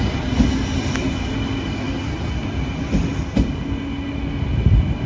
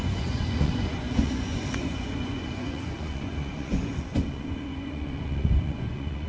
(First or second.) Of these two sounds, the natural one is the first